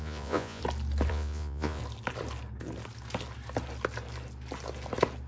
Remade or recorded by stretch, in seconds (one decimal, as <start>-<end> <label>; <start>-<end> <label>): 0.0-0.6 remade; 0.6-1.1 recorded; 1.1-1.8 remade; 1.8-5.3 recorded